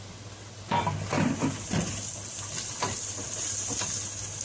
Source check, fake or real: real